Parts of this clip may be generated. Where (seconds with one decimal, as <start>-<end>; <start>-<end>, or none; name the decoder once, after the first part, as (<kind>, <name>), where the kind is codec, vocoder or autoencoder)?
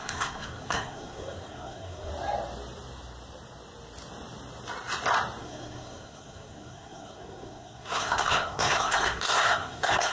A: 0.0-2.1 (codec, SNAC); 5.4-10.1